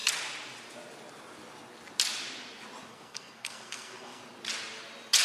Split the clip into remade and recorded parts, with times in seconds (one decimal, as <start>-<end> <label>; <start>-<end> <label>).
0.0-2.9 recorded; 2.9-4.2 remade; 4.2-5.2 recorded